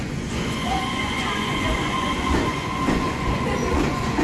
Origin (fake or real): fake